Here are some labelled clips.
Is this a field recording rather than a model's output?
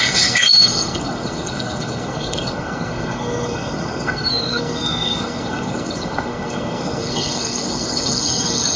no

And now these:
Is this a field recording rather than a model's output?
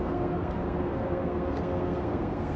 no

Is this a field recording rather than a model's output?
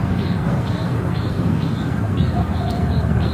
no